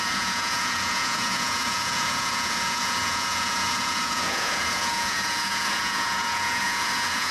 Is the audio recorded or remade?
remade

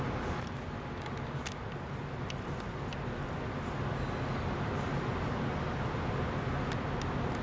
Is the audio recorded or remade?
recorded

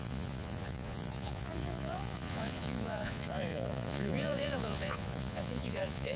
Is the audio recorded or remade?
remade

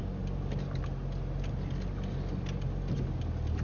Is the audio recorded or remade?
recorded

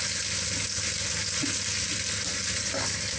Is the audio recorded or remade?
recorded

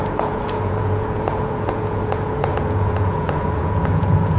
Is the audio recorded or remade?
remade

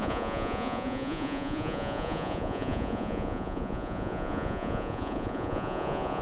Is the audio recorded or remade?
remade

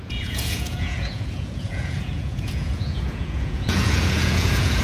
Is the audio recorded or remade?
remade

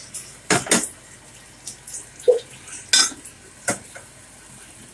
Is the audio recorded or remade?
recorded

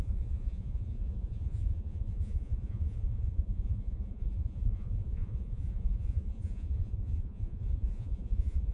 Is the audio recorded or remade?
remade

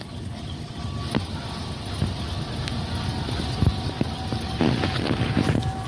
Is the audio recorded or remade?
recorded